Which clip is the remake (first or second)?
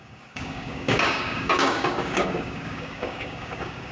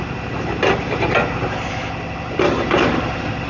first